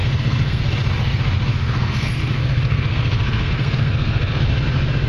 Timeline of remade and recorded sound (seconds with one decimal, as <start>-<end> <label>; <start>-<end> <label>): 0.0-0.6 remade; 0.6-1.5 recorded; 1.5-4.6 remade; 4.6-5.1 recorded